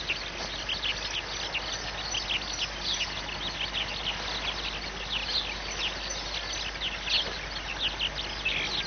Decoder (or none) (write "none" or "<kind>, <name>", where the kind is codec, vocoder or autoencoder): none